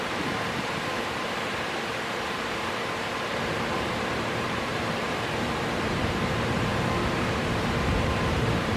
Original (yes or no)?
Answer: no